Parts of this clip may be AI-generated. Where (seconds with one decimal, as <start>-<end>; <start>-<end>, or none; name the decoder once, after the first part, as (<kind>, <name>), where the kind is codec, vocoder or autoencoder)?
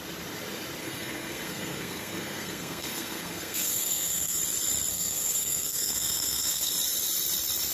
0.8-4.4 (codec, SNAC); 4.9-6.7